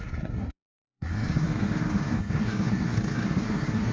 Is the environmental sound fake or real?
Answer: fake